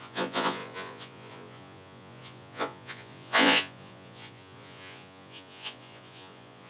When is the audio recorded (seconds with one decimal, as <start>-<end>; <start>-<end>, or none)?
none